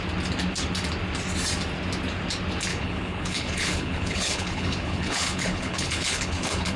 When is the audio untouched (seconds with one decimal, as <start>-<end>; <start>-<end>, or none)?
0.0-2.7